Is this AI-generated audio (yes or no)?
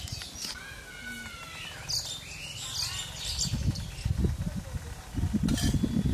no